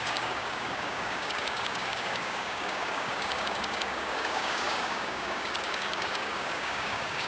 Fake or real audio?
fake